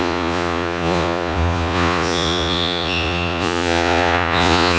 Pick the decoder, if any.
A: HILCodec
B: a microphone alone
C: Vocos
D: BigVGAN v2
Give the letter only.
C